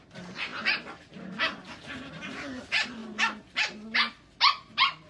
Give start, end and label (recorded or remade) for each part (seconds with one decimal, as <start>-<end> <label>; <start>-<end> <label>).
0.0-5.1 recorded